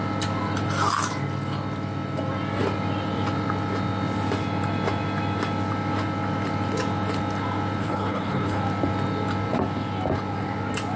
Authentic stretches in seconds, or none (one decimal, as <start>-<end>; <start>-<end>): 0.0-7.8; 8.6-11.0

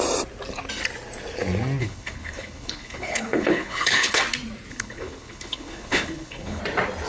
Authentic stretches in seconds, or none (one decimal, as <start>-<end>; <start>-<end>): 0.0-1.8; 4.2-4.7; 6.6-7.1

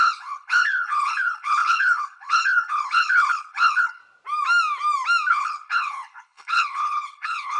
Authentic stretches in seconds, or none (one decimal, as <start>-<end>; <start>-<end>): 4.0-5.3

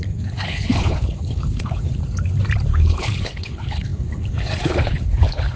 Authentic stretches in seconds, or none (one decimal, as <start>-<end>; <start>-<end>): 2.0-2.7

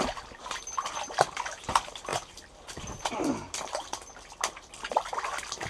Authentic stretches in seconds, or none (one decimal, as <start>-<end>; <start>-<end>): 0.0-5.7